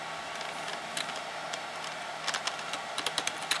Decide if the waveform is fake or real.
real